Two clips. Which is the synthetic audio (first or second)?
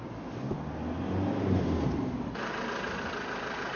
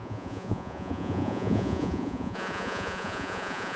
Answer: second